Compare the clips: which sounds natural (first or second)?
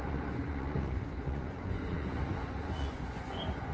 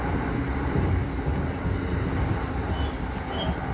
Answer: second